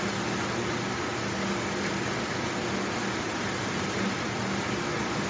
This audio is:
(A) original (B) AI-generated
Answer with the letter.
A